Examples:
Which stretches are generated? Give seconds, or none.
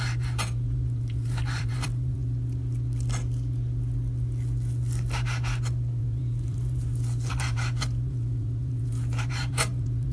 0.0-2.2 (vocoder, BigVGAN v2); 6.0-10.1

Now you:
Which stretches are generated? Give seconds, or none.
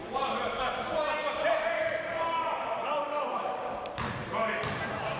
0.0-0.6 (vocoder, BigVGAN v2); 1.2-4.3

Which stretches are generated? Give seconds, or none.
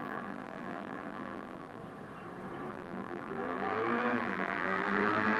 0.0-1.8 (vocoder, BigVGAN v2); 2.7-5.4